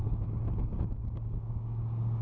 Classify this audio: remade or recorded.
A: remade